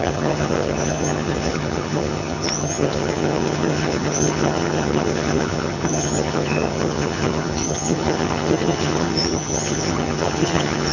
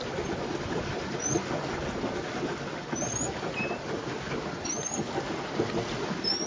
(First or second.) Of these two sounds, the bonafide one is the second